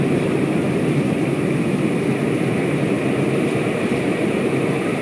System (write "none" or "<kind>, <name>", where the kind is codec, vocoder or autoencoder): none